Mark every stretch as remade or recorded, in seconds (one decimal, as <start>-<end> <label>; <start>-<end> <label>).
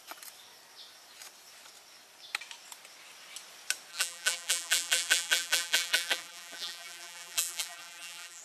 0.0-3.9 recorded; 3.9-8.4 remade